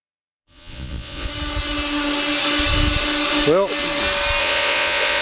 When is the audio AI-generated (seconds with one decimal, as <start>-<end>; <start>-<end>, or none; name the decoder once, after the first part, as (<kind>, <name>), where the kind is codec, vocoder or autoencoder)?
0.0-1.3 (vocoder, Vocos); 4.4-5.2